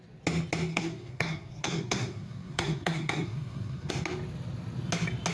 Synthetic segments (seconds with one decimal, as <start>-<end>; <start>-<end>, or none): 0.7-3.9